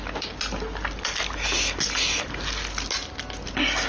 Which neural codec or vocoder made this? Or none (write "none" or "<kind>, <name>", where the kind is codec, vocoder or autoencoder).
none